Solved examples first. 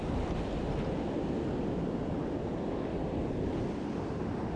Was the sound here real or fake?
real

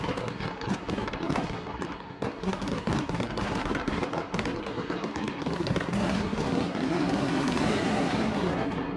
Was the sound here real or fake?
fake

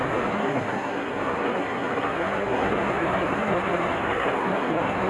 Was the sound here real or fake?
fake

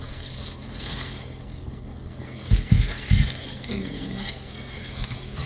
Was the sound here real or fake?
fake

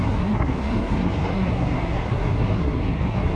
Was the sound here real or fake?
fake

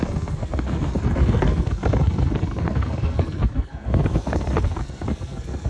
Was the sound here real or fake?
fake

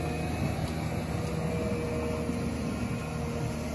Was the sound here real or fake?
real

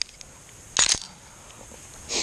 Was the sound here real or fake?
real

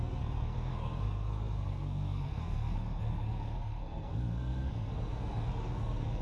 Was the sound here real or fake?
fake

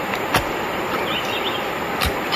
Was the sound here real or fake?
real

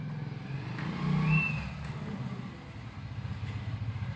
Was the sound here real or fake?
real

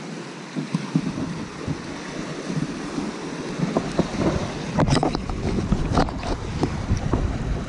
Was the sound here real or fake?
real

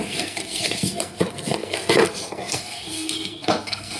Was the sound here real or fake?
fake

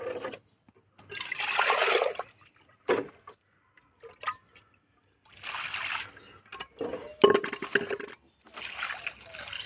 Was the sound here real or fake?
real